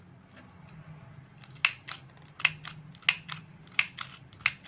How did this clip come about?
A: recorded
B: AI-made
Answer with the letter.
A